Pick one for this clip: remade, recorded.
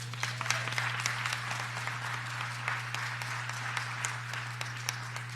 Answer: recorded